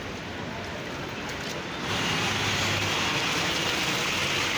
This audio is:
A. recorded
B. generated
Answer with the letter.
A